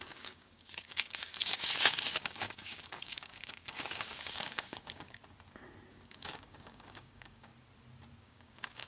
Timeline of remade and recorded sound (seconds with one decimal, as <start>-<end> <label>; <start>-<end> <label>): 0.0-5.2 remade; 5.2-5.9 recorded; 5.9-7.5 remade; 7.5-8.2 recorded; 8.2-8.9 remade